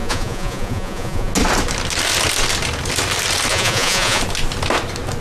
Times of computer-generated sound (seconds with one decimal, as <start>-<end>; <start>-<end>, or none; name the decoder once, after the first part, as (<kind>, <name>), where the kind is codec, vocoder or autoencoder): 0.0-1.3 (vocoder, Vocos); 3.5-4.2